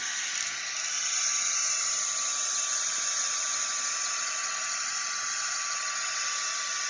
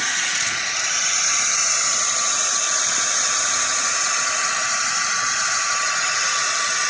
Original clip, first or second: first